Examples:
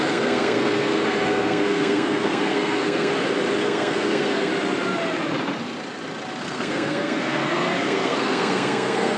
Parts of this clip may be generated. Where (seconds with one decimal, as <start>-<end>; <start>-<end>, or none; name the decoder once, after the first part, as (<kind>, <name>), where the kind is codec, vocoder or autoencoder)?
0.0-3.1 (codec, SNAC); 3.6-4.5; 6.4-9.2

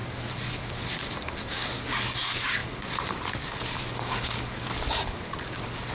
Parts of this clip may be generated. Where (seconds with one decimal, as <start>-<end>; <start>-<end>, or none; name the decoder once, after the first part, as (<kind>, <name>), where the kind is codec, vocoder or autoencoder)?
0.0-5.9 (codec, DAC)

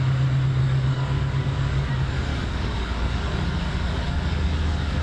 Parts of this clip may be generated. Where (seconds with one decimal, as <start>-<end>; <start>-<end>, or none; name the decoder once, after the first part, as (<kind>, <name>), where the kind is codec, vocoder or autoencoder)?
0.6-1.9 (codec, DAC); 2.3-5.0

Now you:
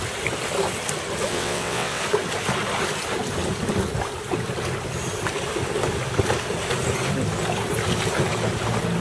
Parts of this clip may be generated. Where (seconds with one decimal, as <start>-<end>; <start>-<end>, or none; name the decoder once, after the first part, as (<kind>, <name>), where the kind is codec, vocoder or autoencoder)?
1.3-2.0 (vocoder, WaveNeXt)

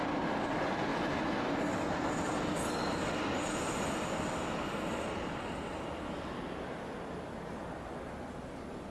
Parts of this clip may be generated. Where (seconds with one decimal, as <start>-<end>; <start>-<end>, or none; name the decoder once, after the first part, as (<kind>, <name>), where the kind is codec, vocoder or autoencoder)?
none

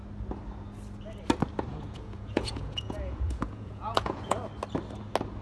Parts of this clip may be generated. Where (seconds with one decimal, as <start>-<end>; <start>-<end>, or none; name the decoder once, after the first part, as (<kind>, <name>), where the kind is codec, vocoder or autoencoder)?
1.7-4.4 (vocoder, Vocos)

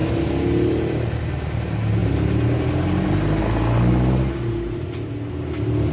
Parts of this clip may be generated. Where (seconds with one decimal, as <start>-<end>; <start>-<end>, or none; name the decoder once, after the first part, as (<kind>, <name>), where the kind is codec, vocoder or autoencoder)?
none

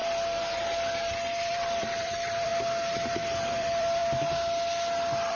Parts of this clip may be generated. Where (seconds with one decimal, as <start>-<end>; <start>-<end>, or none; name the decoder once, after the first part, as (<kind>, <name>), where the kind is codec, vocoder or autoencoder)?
1.4-2.5 (vocoder, BigVGAN v2); 3.1-4.0